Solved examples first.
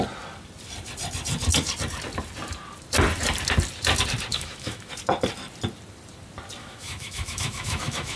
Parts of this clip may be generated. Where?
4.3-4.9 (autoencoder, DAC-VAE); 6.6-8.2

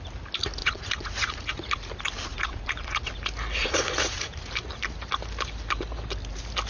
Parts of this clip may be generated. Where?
0.6-1.7 (vocoder, Vocos); 2.3-3.1; 3.6-4.5

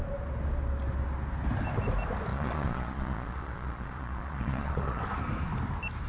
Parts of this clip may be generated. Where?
2.3-5.0 (vocoder, Vocos)

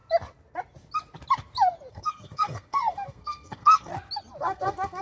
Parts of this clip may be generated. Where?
1.9-3.9 (codec, SNAC); 4.4-5.0